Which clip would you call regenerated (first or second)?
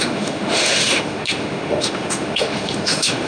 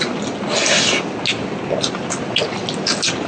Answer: first